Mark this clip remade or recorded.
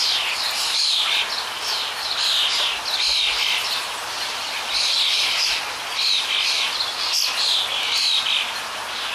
recorded